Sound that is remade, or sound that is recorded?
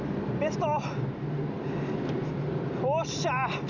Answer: recorded